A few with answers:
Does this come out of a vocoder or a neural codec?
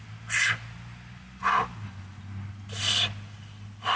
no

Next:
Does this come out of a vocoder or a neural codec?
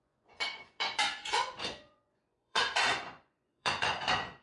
yes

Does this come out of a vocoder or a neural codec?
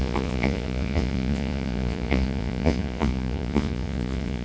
yes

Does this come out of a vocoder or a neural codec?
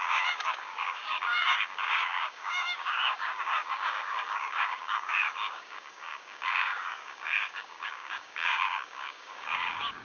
yes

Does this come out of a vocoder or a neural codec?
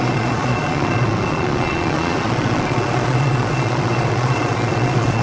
yes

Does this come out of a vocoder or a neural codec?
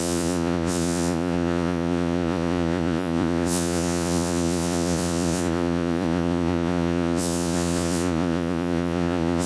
yes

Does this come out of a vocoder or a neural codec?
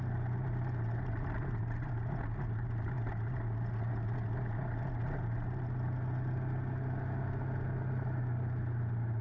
no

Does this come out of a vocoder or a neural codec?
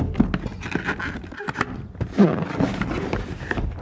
no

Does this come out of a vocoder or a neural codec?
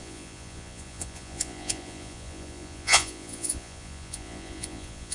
yes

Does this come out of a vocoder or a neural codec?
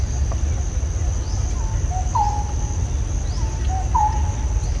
no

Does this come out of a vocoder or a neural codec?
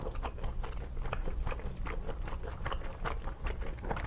no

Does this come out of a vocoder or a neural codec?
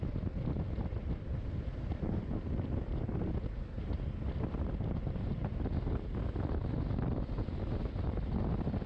no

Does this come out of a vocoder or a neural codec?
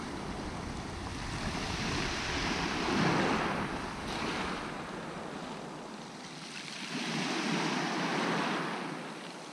no